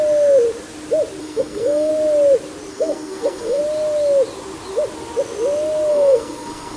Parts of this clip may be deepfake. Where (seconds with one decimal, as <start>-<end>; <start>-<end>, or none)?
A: 1.2-1.9; 2.7-3.6; 5.9-6.8